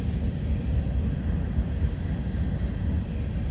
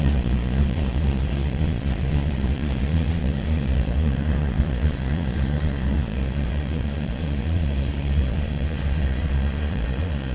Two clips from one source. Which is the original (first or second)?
first